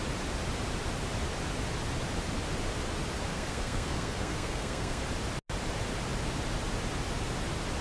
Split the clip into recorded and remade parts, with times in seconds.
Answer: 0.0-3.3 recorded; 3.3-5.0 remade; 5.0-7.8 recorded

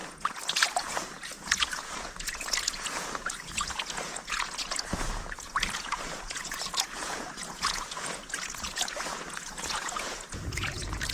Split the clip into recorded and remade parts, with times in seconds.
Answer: 0.0-11.1 remade

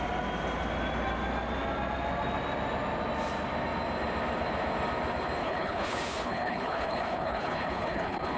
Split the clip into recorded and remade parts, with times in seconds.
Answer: 0.0-5.4 recorded; 5.4-8.4 remade